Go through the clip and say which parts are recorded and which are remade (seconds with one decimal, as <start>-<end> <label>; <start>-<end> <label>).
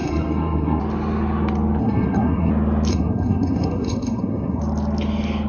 0.0-0.8 remade; 0.8-1.8 recorded; 1.8-2.5 remade; 2.5-2.9 recorded; 2.9-4.6 remade; 4.6-5.5 recorded